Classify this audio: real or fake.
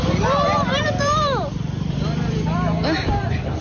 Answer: fake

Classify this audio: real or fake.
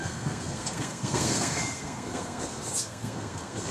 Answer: fake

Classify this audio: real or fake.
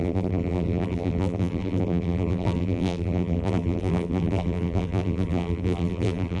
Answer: fake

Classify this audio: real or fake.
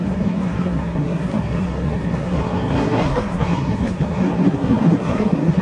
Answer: fake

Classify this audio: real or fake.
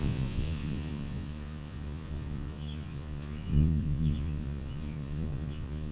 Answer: fake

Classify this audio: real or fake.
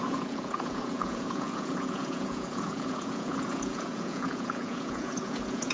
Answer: fake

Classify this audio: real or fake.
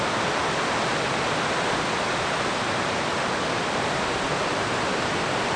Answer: real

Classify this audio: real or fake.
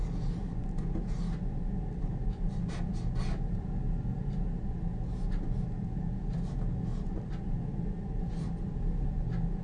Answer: real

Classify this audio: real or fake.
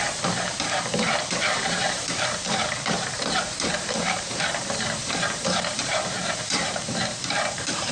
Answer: fake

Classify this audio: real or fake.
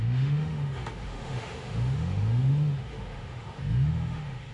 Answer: fake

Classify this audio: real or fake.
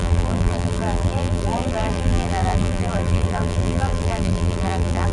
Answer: fake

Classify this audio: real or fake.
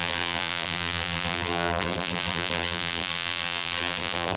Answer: fake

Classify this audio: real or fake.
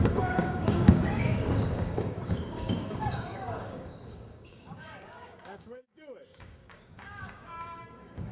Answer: fake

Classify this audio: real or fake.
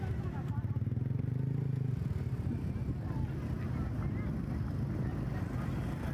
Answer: real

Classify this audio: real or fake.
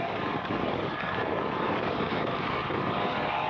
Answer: fake